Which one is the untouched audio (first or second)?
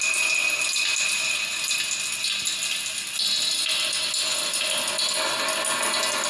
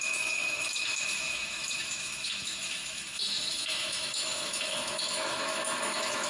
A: first